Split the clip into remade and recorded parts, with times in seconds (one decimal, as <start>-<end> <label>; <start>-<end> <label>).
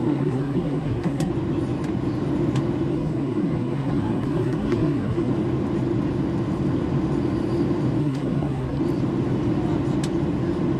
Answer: 0.0-1.3 remade; 1.3-2.9 recorded; 2.9-5.3 remade; 5.3-8.0 recorded; 8.0-8.8 remade; 8.8-10.8 recorded